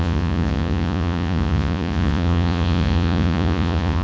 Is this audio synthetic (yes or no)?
yes